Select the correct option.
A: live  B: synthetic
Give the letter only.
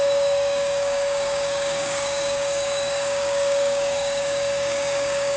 B